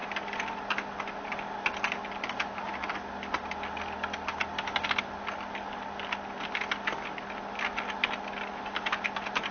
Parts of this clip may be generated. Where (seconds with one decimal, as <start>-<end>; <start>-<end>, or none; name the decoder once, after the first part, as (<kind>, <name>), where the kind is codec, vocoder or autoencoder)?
none